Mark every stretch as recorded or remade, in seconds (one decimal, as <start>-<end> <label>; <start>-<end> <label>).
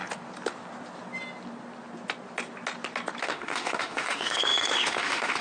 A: 0.0-3.2 recorded; 3.2-5.4 remade